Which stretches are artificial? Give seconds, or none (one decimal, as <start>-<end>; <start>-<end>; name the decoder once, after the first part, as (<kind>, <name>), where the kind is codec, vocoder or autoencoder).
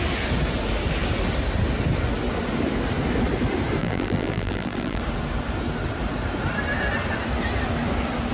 3.8-5.0 (vocoder, BigVGAN v2)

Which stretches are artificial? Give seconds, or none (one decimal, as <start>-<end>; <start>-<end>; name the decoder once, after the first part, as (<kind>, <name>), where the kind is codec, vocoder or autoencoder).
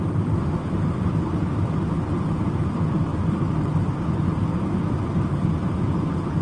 3.1-4.1 (vocoder, BigVGAN v2)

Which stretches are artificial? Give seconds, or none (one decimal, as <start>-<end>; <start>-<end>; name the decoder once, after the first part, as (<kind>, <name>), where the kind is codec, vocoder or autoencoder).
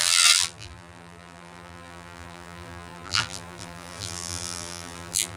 0.0-5.4 (vocoder, BigVGAN v2)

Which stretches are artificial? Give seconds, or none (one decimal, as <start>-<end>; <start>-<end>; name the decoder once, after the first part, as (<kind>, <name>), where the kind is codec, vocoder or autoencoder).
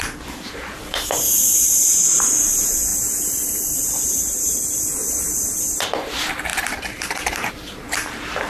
0.0-2.9 (vocoder, BigVGAN v2); 5.6-8.5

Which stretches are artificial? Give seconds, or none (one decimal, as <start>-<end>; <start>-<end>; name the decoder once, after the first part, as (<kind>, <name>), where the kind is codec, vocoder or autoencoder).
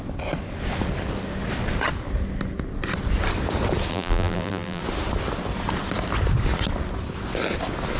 3.9-4.8 (vocoder, BigVGAN v2)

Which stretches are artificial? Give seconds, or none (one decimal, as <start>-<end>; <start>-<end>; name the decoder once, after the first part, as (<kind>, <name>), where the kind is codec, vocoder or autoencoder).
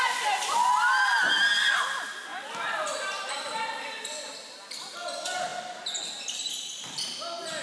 2.3-4.9 (vocoder, BigVGAN v2); 5.5-6.5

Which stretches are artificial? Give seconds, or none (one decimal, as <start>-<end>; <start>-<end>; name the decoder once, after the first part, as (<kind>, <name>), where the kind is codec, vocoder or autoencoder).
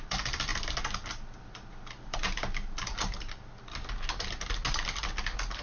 0.0-0.5 (vocoder, BigVGAN v2); 1.4-2.9; 4.7-5.6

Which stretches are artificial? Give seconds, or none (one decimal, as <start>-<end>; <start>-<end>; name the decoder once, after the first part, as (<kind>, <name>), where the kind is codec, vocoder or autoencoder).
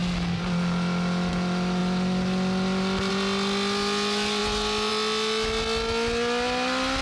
none